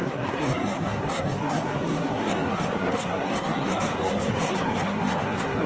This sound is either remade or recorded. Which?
remade